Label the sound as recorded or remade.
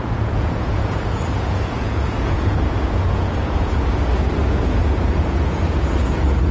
remade